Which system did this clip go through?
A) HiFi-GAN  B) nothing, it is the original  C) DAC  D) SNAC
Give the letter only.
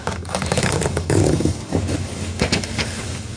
C